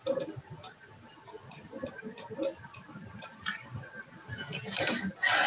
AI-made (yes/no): no